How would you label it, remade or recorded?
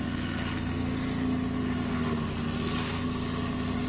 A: recorded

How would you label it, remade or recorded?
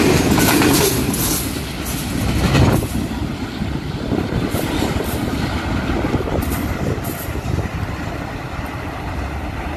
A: recorded